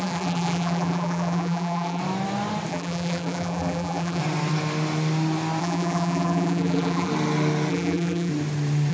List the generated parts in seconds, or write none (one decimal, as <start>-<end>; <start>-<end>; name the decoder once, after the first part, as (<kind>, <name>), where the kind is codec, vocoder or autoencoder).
0.0-2.0 (vocoder, BigVGAN v2); 2.7-4.2; 5.6-7.1; 7.7-8.3